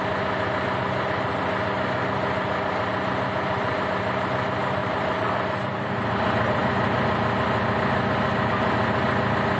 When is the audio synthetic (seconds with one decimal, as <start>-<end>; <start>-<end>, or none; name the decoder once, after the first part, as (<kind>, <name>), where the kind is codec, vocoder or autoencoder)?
4.8-5.9 (vocoder, BigVGAN v2)